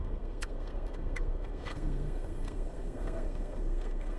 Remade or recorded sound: remade